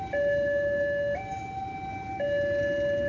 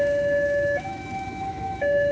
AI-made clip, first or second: second